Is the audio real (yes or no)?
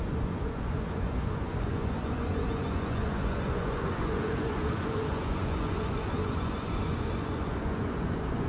no